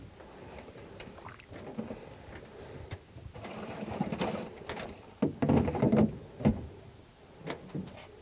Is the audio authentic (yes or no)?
yes